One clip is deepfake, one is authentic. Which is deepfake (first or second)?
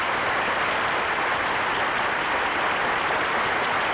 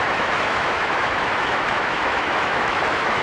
second